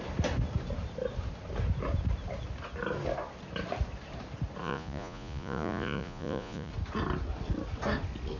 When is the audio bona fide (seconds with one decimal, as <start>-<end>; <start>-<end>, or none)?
0.0-4.6; 6.7-8.4